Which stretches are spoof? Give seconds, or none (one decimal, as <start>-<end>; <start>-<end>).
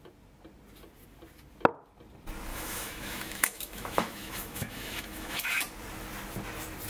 2.5-5.6